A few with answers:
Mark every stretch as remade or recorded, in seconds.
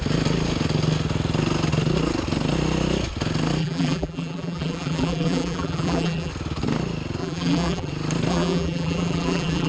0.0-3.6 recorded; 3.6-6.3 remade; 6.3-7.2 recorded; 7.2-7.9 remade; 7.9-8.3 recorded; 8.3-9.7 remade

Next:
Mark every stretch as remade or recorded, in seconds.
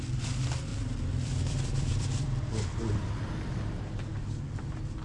0.0-0.7 recorded; 0.7-2.4 remade; 2.4-5.0 recorded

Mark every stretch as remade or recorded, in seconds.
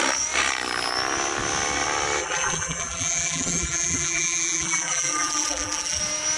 0.0-2.2 recorded; 2.2-6.0 remade; 6.0-6.4 recorded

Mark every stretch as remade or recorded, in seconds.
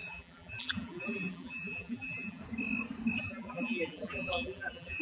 0.0-2.4 remade; 2.4-3.2 recorded; 3.2-5.0 remade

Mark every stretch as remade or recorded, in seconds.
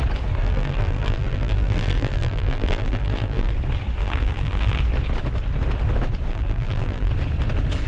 0.0-0.4 recorded; 0.4-3.5 remade; 3.5-4.0 recorded; 4.0-4.8 remade; 4.8-6.3 recorded; 6.3-7.1 remade; 7.1-7.9 recorded